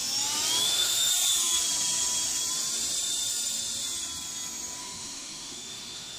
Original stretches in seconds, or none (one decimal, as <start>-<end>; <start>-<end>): 0.0-0.6; 1.1-4.8